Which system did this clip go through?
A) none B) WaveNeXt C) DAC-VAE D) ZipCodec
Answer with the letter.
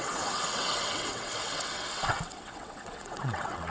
B